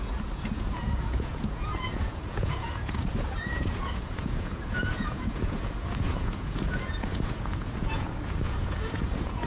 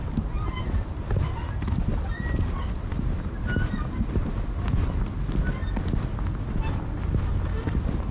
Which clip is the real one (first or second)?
second